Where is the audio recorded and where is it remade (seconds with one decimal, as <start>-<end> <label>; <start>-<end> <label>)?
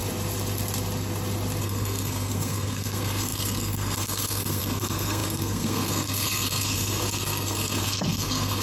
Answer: 0.0-1.6 recorded; 1.6-8.6 remade